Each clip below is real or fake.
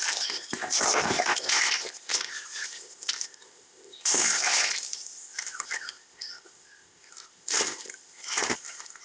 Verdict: fake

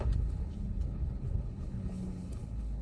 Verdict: fake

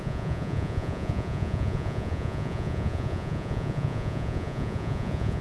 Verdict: fake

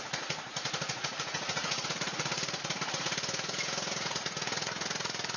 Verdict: fake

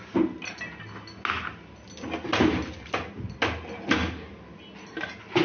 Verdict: real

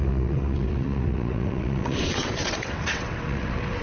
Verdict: fake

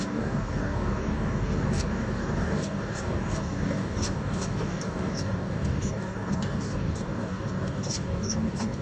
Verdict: fake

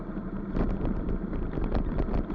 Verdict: real